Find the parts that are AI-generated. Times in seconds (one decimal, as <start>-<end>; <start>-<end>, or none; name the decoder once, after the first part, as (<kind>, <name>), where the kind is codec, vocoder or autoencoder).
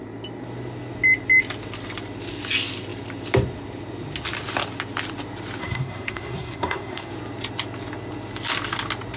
5.6-7.1 (codec, SNAC)